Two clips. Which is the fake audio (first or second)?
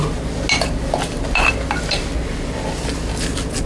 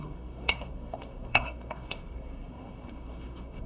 second